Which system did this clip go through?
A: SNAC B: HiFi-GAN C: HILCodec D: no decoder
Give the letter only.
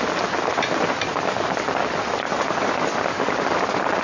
D